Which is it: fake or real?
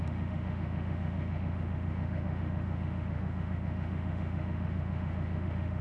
fake